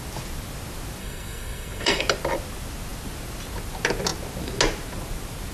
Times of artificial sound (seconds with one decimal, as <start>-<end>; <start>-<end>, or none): 1.0-2.0